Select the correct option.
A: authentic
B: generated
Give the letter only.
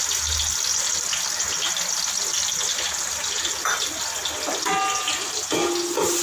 A